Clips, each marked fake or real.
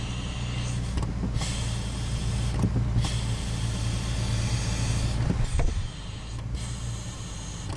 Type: real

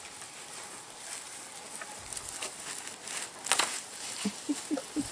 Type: real